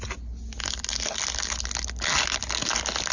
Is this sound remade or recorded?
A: recorded